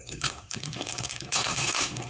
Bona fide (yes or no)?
no